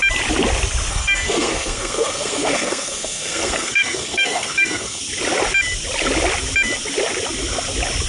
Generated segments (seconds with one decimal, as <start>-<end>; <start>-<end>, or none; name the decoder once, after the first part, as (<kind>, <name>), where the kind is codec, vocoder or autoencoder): 0.9-5.0 (codec, SNAC)